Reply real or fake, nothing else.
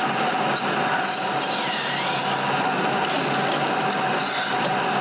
real